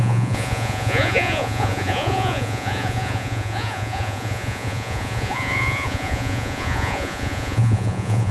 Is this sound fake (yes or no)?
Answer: yes